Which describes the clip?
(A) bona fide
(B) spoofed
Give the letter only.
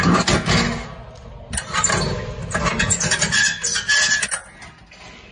A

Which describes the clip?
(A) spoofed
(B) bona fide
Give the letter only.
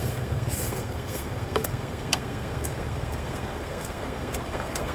A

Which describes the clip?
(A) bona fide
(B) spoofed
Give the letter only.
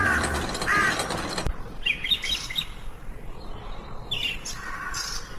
A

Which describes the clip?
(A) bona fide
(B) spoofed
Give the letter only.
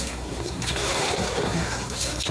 B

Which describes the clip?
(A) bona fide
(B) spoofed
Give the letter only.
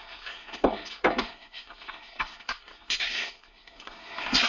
B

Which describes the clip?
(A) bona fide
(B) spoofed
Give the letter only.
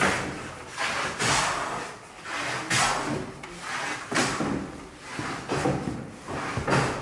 A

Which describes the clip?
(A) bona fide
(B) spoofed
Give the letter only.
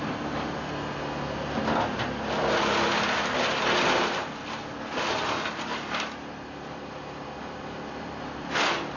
A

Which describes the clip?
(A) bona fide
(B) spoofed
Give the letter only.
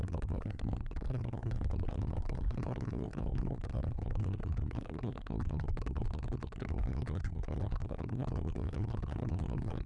B